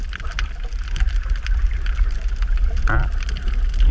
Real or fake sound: real